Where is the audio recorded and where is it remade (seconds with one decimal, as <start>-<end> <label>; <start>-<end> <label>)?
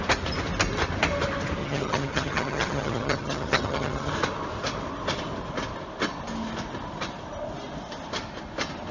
0.0-1.6 recorded; 1.6-4.1 remade; 4.1-8.9 recorded